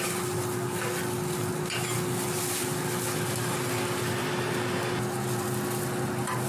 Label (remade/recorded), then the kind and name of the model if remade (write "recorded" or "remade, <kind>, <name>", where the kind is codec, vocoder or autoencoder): recorded